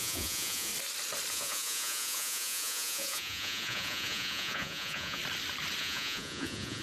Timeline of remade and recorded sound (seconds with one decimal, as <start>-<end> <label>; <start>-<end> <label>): 0.0-0.7 remade; 0.7-1.3 recorded; 1.3-5.2 remade; 5.2-5.8 recorded; 5.8-6.8 remade